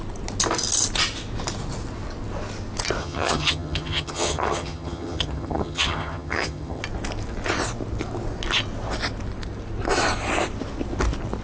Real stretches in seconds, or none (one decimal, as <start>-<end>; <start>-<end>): 0.0-3.0; 6.8-11.4